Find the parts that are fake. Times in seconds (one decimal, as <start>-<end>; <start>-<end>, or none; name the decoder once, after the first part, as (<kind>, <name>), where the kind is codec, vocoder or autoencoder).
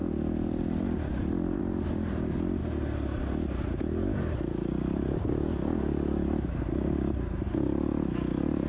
none